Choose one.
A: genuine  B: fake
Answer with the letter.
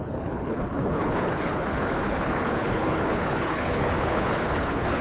B